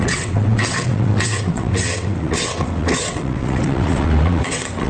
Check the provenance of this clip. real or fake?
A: fake